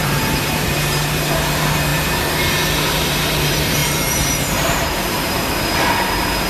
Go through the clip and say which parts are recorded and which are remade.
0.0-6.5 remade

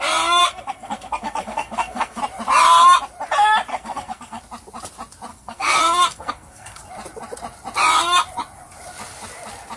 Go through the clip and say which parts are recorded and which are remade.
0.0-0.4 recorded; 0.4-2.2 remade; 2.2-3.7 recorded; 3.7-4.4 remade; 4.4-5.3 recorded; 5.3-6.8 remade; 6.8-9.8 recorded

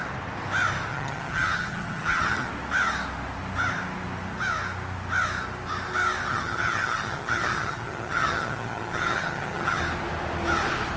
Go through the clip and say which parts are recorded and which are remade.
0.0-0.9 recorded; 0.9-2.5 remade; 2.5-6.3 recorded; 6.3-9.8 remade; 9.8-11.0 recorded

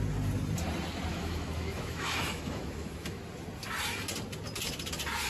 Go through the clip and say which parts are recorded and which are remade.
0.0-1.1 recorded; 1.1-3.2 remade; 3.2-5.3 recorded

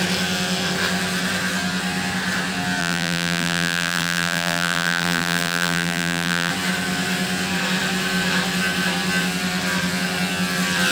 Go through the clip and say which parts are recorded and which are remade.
0.0-2.8 recorded; 2.8-6.5 remade; 6.5-10.9 recorded

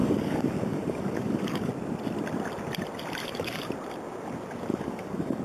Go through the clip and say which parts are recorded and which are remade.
0.0-1.7 remade; 1.7-3.2 recorded; 3.2-3.7 remade; 3.7-4.7 recorded; 4.7-5.4 remade

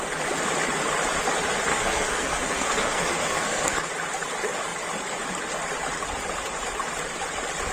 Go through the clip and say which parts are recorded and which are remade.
0.0-1.7 recorded; 1.7-3.8 remade; 3.8-7.7 recorded

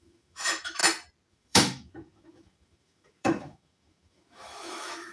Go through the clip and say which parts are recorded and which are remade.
0.0-0.8 remade; 0.8-1.3 recorded; 1.3-5.1 remade